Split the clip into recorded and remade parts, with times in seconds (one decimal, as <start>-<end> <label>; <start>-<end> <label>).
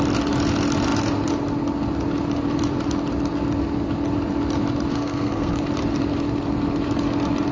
0.0-4.9 recorded; 4.9-5.6 remade; 5.6-7.5 recorded